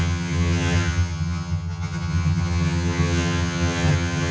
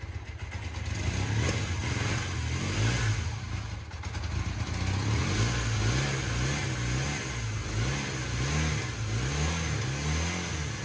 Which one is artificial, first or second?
first